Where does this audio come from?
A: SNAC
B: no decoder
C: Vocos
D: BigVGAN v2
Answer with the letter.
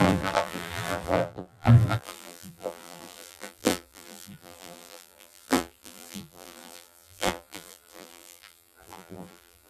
D